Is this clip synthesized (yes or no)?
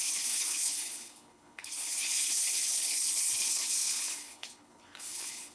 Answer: yes